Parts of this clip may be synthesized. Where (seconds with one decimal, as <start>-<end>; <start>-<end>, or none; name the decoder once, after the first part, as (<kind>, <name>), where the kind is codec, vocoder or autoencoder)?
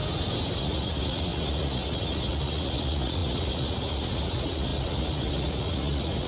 0.6-6.3 (vocoder, Vocos)